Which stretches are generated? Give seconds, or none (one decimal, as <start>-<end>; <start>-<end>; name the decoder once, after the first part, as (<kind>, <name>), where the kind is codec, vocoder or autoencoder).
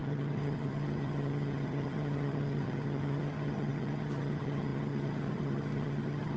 0.0-6.4 (vocoder, HiFi-GAN)